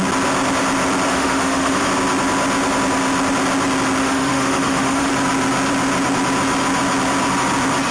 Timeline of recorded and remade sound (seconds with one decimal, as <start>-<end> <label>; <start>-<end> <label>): 0.0-1.1 recorded; 1.1-1.8 remade; 1.8-4.0 recorded; 4.0-5.1 remade; 5.1-7.9 recorded

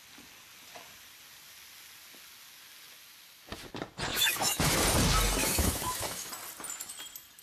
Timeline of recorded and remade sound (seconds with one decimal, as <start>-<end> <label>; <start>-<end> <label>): 0.0-4.1 recorded; 4.1-4.8 remade; 4.8-5.4 recorded; 5.4-6.3 remade; 6.3-7.4 recorded

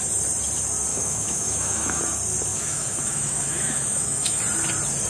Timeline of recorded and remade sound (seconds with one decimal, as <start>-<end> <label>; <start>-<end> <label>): 0.0-0.9 recorded; 0.9-2.0 remade; 2.0-2.5 recorded; 2.5-4.4 remade; 4.4-5.1 recorded

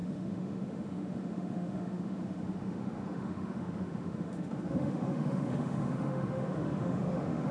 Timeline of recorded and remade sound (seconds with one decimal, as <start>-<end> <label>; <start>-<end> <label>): 0.0-7.5 remade

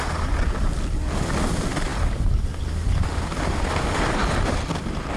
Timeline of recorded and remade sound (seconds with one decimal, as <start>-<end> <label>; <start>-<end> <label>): 0.0-5.2 recorded